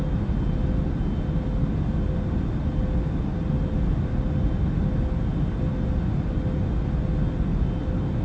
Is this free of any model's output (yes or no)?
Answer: yes